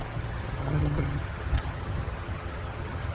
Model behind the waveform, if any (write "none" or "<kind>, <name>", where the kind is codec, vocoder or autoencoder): vocoder, HiFi-GAN